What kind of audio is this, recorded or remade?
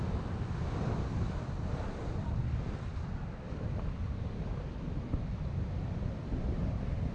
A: recorded